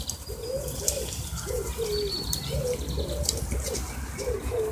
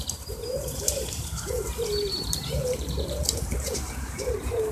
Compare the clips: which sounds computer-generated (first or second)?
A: second